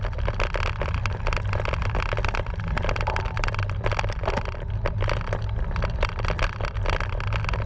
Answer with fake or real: real